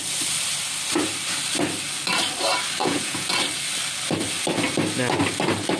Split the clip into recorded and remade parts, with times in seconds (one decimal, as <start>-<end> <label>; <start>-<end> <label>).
0.0-2.8 recorded; 2.8-3.3 remade; 3.3-5.8 recorded